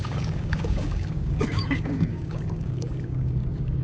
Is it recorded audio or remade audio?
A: remade